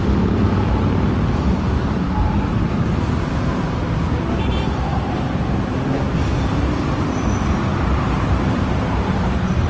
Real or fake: fake